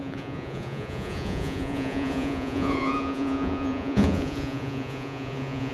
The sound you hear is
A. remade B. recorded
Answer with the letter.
A